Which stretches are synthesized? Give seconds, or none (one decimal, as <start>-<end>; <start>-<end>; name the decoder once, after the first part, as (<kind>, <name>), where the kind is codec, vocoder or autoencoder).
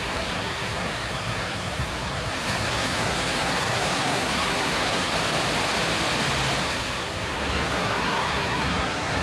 0.0-5.1 (codec, SNAC); 6.6-9.2